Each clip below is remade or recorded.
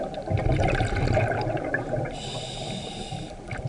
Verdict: recorded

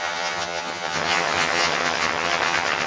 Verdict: remade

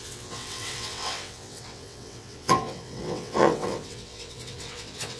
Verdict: remade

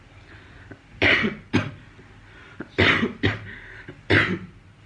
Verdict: recorded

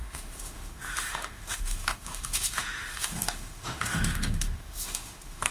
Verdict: remade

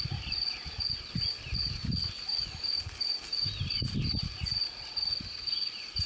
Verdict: remade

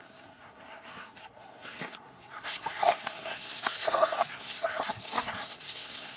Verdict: remade